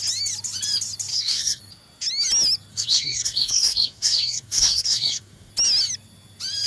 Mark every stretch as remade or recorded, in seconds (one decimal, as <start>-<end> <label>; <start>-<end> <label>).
0.0-1.1 recorded; 1.1-1.6 remade; 1.6-2.7 recorded; 2.7-5.5 remade; 5.5-6.7 recorded